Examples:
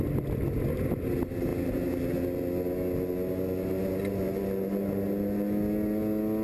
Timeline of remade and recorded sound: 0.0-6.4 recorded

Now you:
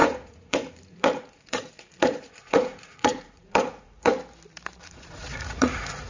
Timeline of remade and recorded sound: 0.0-4.1 remade; 4.1-4.8 recorded; 4.8-6.1 remade

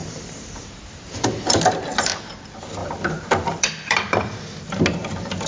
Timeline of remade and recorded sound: 0.0-1.6 remade; 1.6-2.8 recorded; 2.8-4.8 remade; 4.8-5.5 recorded

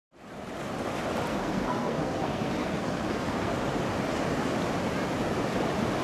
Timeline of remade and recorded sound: 0.0-1.3 recorded; 1.3-3.5 remade; 3.5-6.0 recorded

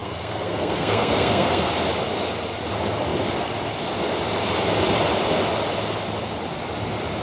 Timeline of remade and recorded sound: 0.0-1.7 remade; 1.7-7.2 recorded

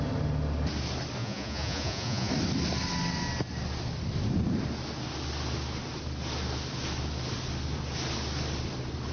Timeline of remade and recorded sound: 0.0-1.2 recorded; 1.2-2.3 remade; 2.3-9.1 recorded

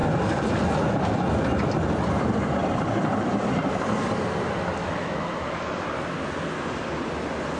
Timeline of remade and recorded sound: 0.0-4.8 recorded; 4.8-5.7 remade; 5.7-7.6 recorded